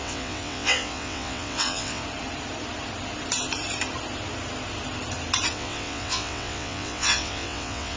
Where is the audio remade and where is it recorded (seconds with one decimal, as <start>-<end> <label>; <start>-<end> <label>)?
0.0-2.0 remade; 2.0-5.5 recorded; 5.5-8.0 remade